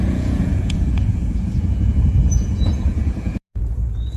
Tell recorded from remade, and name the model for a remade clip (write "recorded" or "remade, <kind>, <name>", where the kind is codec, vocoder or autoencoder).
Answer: remade, vocoder, Vocos